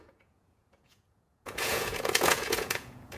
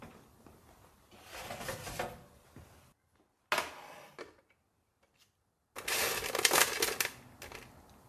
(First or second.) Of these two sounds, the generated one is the first